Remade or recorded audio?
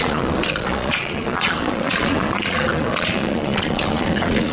remade